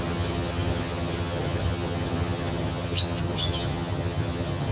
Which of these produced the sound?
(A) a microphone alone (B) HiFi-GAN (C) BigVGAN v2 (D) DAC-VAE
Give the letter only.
B